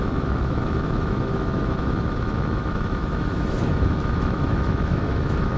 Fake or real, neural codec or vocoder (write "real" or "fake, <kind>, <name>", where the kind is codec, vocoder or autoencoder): fake, autoencoder, DAC-VAE